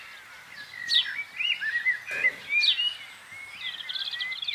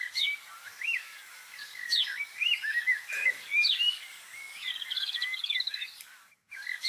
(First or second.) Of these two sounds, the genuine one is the first